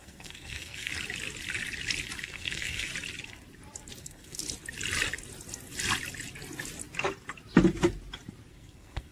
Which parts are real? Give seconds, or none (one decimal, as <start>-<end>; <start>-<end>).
0.9-2.2; 2.9-4.0; 4.4-8.5